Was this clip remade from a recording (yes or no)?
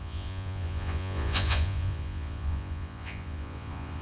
yes